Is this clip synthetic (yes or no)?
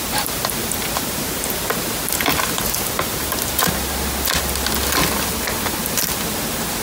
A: no